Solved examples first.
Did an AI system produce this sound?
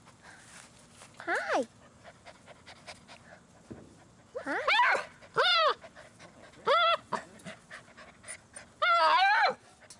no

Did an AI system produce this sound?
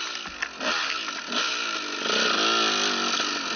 no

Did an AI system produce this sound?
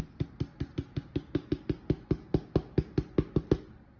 no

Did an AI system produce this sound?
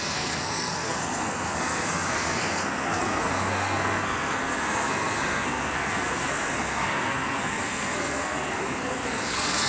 yes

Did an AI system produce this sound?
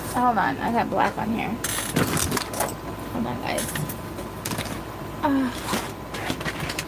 no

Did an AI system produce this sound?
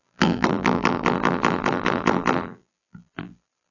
yes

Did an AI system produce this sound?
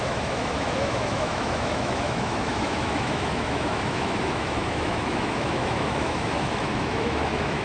yes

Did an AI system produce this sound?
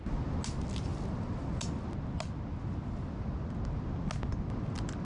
no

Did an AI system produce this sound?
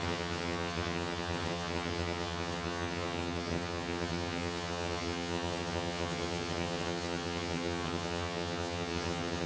yes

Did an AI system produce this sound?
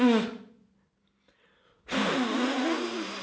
no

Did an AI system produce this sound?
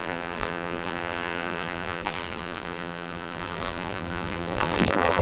yes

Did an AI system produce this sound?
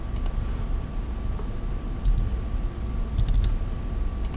no